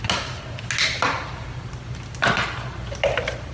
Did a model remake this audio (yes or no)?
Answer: no